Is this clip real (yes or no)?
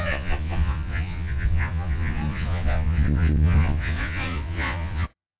no